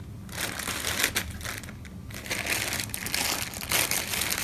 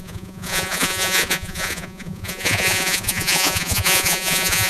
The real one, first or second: first